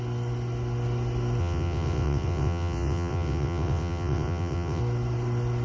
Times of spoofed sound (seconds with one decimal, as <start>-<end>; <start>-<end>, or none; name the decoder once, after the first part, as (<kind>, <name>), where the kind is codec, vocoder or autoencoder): 1.4-4.8 (vocoder, WaveNeXt)